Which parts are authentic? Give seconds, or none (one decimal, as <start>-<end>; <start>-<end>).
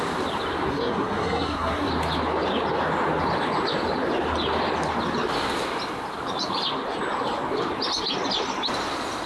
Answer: 0.0-0.7; 1.9-9.3